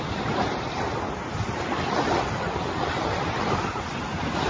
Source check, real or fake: real